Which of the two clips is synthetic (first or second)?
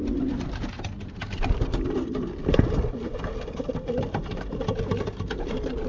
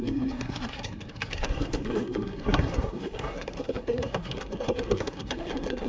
second